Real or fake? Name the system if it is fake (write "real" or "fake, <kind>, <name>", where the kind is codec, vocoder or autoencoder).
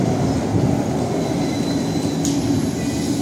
real